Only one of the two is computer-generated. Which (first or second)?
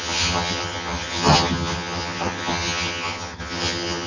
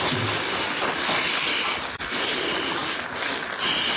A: first